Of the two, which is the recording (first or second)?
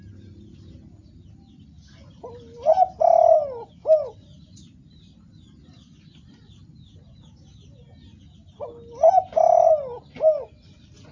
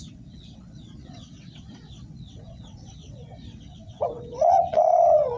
first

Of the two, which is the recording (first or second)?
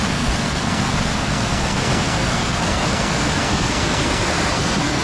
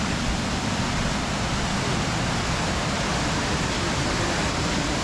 second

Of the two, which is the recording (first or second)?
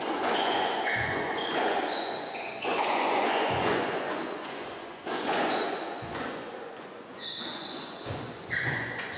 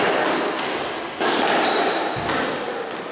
second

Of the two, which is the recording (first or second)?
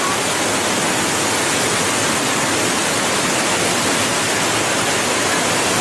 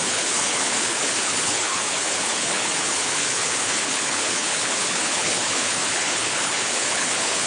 first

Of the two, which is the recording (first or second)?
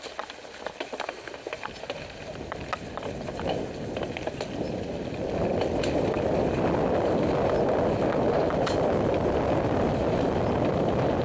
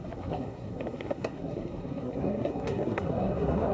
first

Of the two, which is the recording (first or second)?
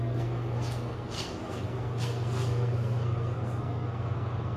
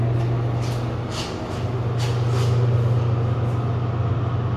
second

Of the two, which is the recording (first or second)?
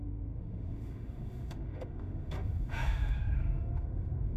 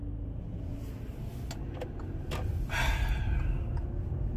second